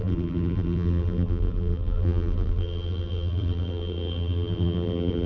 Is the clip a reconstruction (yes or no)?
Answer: yes